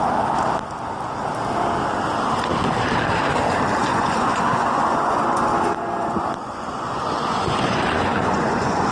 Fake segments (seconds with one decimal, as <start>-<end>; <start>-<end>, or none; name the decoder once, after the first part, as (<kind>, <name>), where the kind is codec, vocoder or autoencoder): 3.9-8.9 (vocoder, Vocos)